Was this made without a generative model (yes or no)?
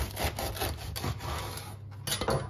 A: yes